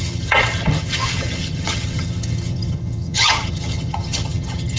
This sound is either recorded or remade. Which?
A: remade